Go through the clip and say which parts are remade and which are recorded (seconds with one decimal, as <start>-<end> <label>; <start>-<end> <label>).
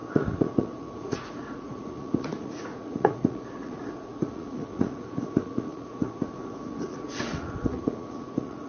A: 0.0-8.7 remade